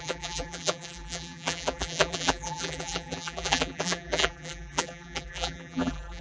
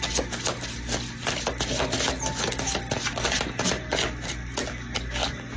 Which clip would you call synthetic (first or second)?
first